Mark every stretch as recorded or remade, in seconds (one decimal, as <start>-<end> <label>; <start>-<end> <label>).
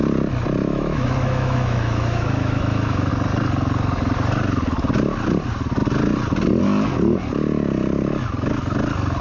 0.0-0.6 recorded; 0.6-3.1 remade; 3.1-9.2 recorded